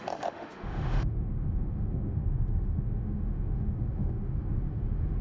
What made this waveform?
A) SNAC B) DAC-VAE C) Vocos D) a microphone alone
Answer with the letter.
B